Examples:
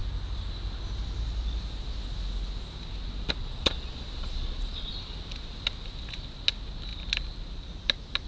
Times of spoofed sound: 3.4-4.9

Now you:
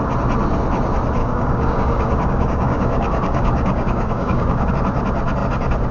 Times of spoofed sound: 1.2-4.7

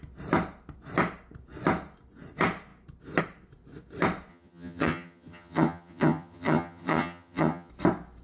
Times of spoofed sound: 4.3-7.7

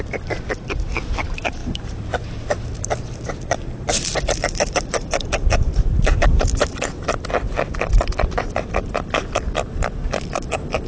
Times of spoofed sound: 0.0-7.3; 10.4-10.9

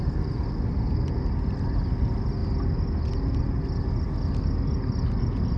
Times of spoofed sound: none

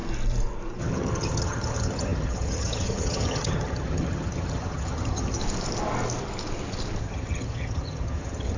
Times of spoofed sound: 0.8-5.4; 7.0-8.6

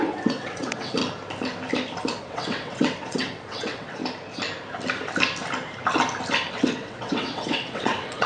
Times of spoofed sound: 0.0-1.0; 2.2-4.0; 6.5-8.3

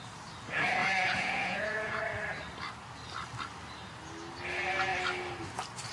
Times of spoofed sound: 0.8-2.0